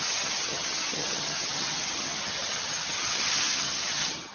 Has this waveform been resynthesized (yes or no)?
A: yes